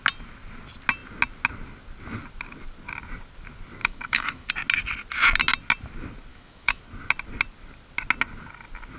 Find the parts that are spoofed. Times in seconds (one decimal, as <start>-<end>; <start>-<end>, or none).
3.8-4.5; 6.3-6.8